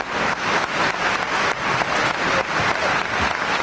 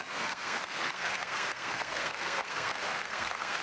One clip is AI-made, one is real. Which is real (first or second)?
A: first